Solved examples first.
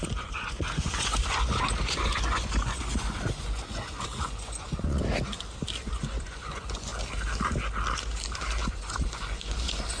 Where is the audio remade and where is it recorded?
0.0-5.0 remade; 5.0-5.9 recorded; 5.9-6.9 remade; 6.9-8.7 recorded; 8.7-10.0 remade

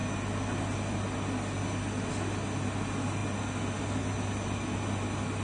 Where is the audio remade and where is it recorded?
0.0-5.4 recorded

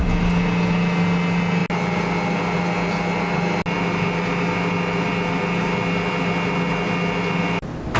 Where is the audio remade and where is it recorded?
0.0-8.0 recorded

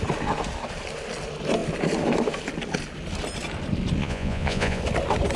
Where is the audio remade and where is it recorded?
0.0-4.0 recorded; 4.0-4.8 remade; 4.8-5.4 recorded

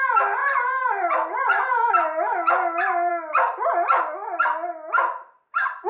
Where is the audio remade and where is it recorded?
0.0-5.9 recorded

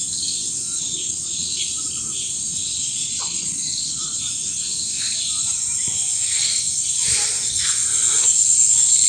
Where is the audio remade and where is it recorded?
0.0-0.7 recorded; 0.7-1.6 remade; 1.6-2.5 recorded; 2.5-4.2 remade; 4.2-9.1 recorded